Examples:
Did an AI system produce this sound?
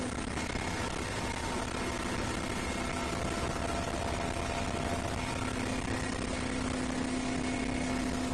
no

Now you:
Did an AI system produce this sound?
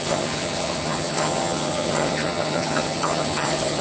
yes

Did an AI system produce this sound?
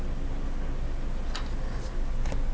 no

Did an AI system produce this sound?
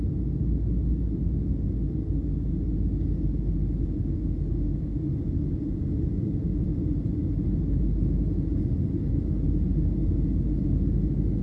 no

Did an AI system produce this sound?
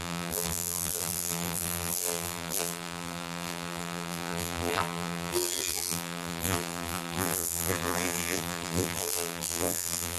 yes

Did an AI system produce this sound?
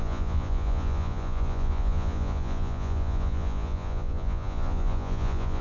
yes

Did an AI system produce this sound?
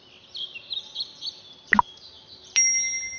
no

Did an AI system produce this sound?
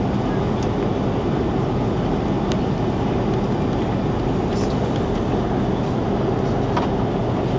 no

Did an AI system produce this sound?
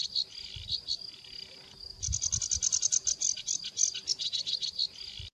no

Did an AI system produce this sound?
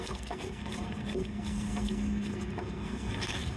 yes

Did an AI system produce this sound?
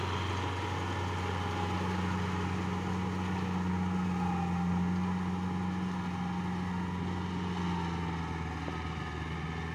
no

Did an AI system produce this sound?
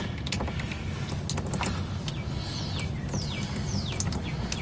no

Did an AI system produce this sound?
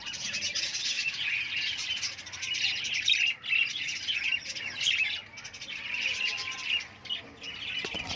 no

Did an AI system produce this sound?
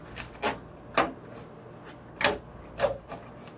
no